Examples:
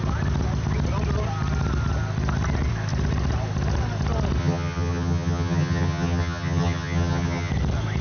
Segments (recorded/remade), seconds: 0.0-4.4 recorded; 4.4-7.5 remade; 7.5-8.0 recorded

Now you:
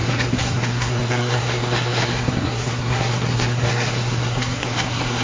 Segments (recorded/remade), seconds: 0.0-5.2 remade

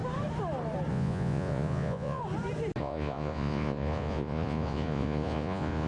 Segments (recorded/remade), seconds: 0.0-0.9 recorded; 0.9-2.2 remade; 2.2-2.8 recorded; 2.8-5.9 remade

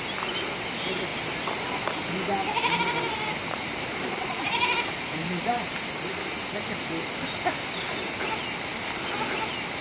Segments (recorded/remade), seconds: 0.0-3.4 recorded; 3.4-5.8 remade; 5.8-9.8 recorded